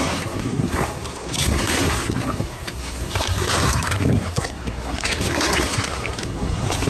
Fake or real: fake